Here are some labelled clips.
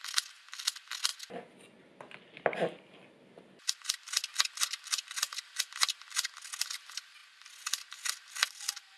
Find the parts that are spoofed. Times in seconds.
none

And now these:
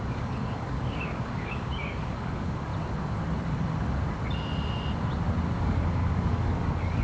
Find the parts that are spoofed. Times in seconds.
0.0-2.7 (codec, DAC); 5.6-7.0

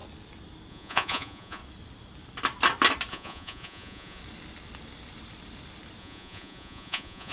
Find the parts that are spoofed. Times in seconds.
0.7-1.6 (vocoder, Vocos); 3.1-4.2; 6.0-7.3

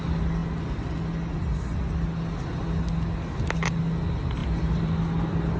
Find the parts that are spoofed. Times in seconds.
4.4-5.0 (vocoder, BigVGAN v2)

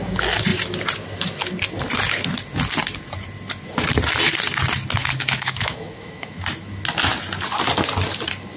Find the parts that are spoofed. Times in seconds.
5.0-6.4 (autoencoder, DAC-VAE)